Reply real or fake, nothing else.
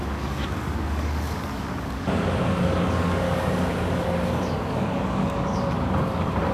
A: fake